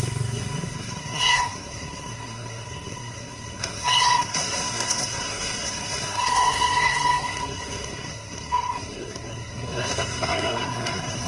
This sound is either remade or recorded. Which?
remade